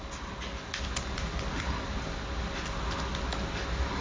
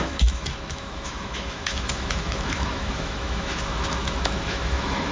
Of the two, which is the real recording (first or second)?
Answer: first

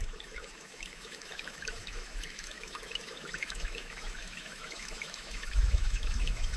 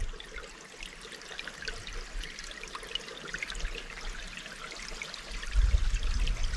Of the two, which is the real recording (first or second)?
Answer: second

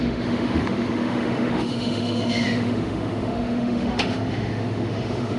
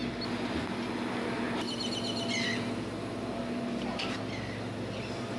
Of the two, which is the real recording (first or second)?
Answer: second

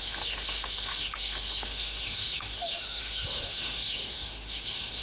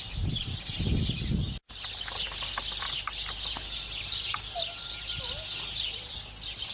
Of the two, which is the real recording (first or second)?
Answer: second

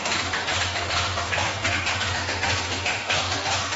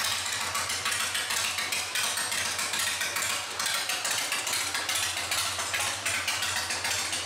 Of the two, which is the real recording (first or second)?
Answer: second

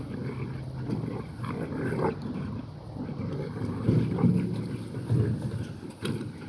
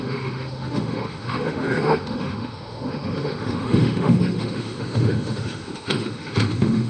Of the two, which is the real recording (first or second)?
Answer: first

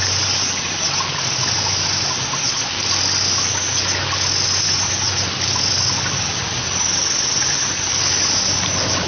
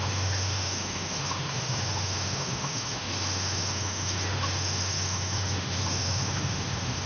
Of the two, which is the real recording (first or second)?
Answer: first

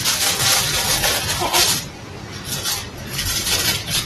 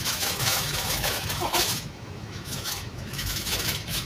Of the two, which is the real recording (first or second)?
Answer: first